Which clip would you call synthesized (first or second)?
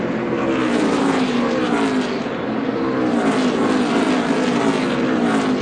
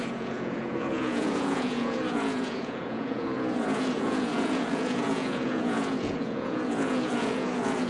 second